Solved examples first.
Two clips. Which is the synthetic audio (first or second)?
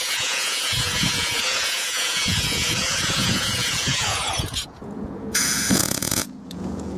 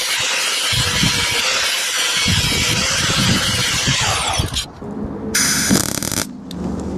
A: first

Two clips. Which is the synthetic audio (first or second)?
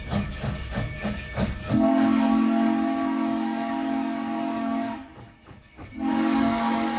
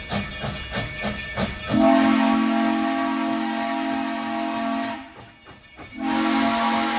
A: first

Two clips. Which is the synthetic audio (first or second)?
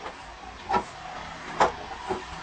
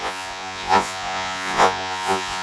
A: second